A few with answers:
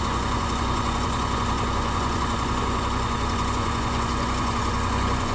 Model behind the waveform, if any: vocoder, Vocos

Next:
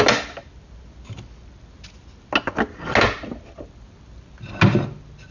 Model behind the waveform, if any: none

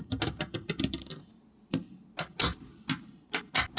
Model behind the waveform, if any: none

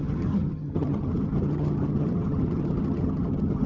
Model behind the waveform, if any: vocoder, HiFi-GAN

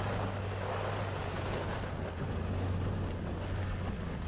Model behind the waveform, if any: none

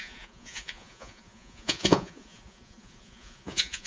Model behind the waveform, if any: vocoder, Vocos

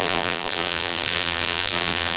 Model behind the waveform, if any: vocoder, BigVGAN v2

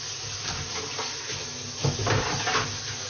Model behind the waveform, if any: none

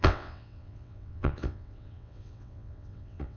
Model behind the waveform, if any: vocoder, WaveNeXt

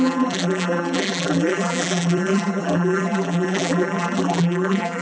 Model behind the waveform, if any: vocoder, BigVGAN v2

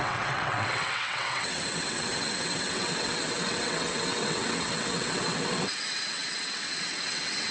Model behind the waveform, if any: vocoder, WaveNeXt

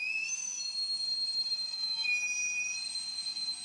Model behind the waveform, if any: none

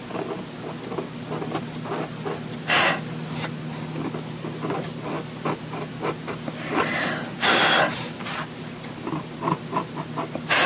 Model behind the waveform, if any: none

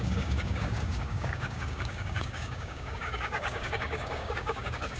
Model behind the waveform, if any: codec, DAC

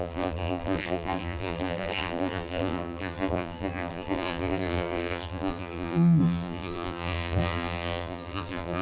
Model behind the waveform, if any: vocoder, BigVGAN v2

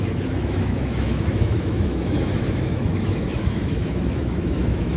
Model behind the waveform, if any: autoencoder, DAC-VAE